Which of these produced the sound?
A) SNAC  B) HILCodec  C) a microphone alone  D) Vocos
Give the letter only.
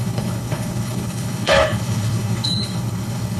B